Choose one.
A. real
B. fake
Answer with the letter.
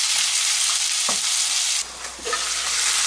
A